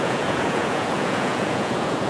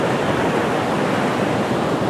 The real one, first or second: second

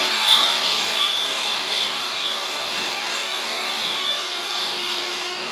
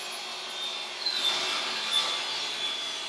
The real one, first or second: second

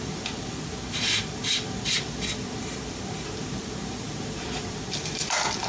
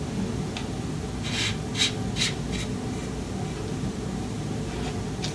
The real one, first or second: second